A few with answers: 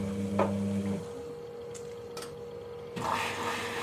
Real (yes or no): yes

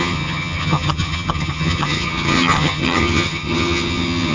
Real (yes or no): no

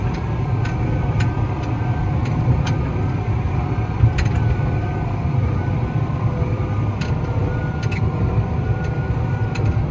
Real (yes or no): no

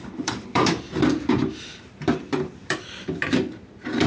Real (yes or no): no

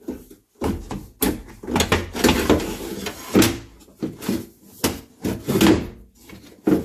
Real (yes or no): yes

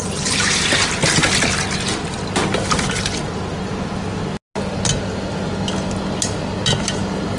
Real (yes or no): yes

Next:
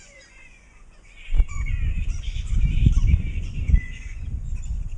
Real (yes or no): no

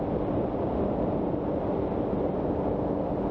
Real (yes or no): yes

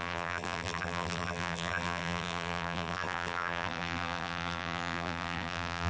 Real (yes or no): no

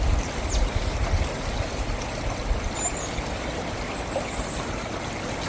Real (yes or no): yes